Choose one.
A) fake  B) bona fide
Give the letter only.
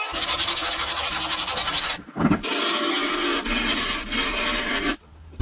B